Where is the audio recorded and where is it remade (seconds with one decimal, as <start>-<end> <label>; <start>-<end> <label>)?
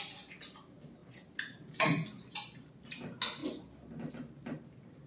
0.0-5.1 recorded